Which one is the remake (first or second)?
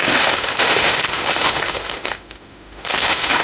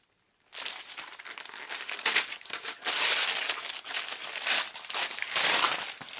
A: first